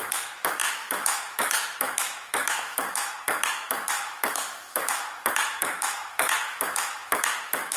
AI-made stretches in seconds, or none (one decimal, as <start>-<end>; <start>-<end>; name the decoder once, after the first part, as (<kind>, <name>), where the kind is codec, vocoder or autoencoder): 0.0-7.8 (autoencoder, DAC-VAE)